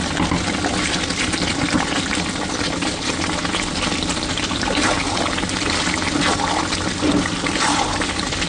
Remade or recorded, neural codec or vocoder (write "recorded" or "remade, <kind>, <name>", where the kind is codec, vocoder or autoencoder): recorded